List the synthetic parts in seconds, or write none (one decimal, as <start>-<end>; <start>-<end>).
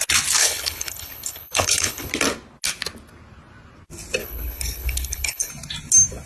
0.4-2.1; 4.2-5.5